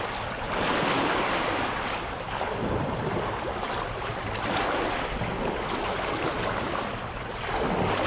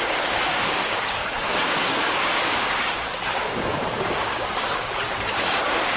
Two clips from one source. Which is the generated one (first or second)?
second